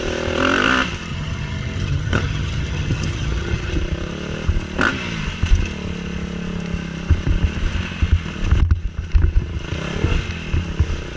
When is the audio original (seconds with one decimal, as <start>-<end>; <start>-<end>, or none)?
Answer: 0.0-1.1; 3.7-11.2